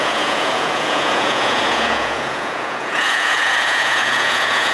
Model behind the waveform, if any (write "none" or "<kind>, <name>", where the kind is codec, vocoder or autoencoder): vocoder, Vocos